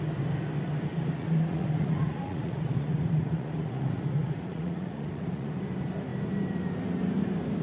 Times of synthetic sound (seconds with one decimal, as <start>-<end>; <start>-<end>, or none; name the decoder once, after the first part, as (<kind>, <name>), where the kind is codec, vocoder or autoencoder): 0.9-5.5 (vocoder, Vocos)